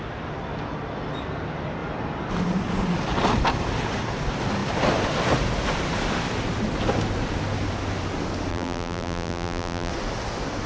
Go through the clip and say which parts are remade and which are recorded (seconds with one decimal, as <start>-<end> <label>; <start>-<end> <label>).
0.0-8.5 recorded; 8.5-9.9 remade; 9.9-10.7 recorded

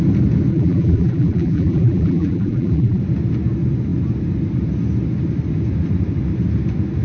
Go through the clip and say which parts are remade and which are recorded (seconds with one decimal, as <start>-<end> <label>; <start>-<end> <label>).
0.0-0.5 recorded; 0.5-3.0 remade; 3.0-7.0 recorded